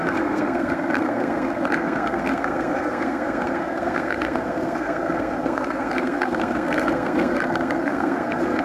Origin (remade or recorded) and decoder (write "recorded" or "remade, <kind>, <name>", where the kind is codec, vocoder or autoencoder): remade, codec, SNAC